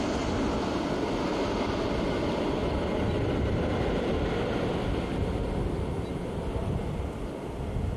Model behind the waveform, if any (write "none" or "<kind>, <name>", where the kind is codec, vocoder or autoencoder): none